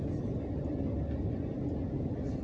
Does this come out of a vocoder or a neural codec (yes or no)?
no